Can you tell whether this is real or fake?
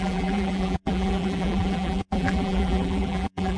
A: fake